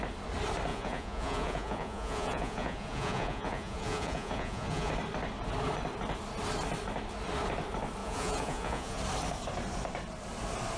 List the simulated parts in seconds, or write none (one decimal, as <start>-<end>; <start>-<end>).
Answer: 0.7-4.9; 8.0-9.0